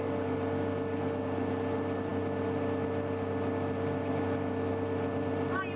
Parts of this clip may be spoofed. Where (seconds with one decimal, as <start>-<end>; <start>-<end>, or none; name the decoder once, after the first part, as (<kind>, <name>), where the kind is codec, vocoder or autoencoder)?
none